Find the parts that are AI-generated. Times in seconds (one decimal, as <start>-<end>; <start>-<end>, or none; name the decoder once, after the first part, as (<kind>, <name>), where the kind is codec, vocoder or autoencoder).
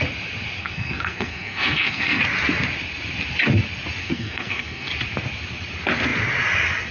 0.6-2.2 (codec, SNAC); 4.0-4.9